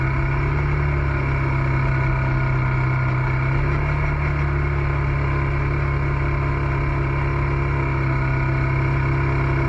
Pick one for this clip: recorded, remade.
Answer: recorded